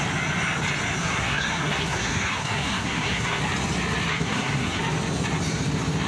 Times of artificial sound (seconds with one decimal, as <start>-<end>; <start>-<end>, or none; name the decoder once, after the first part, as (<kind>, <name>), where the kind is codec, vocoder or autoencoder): 1.0-3.4 (codec, SNAC); 4.1-4.8